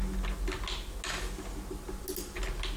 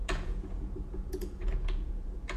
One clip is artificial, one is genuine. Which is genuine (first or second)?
first